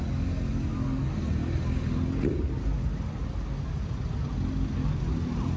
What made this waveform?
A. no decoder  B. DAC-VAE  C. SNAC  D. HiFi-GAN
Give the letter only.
A